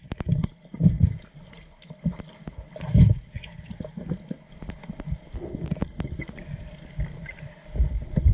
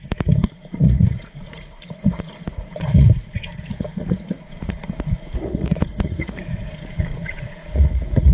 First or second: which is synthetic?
second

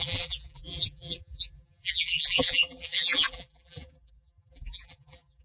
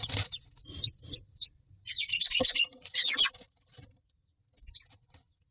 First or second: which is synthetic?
first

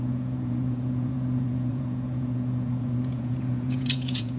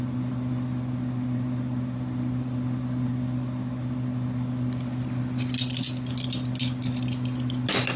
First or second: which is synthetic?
first